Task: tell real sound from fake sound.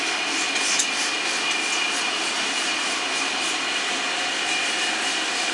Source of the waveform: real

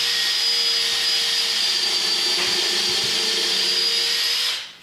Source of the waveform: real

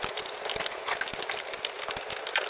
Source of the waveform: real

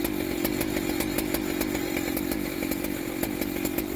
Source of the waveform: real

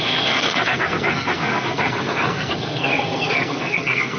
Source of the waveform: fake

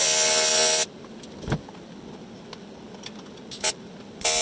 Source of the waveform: real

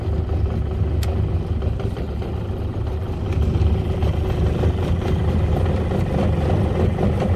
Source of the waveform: real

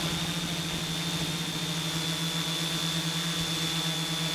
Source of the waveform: real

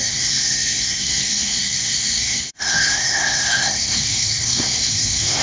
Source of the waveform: fake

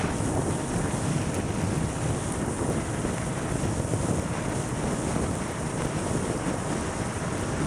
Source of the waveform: real